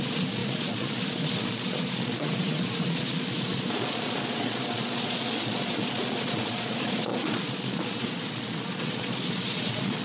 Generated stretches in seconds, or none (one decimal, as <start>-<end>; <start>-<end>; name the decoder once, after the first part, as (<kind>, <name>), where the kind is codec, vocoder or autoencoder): 0.0-10.0 (vocoder, Vocos)